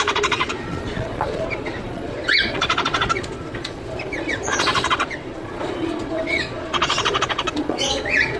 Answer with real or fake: fake